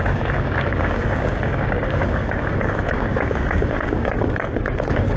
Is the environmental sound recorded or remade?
remade